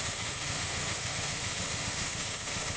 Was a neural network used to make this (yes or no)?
yes